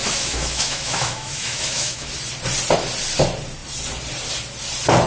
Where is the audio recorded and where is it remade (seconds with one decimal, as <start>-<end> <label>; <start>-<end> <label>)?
0.0-2.1 remade; 2.1-5.1 recorded